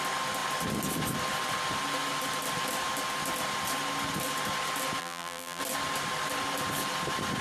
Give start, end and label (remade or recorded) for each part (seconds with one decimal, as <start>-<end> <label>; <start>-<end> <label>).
0.0-5.0 recorded; 5.0-5.6 remade; 5.6-7.4 recorded